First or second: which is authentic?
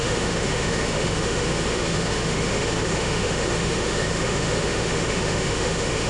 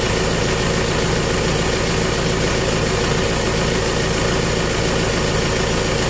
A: second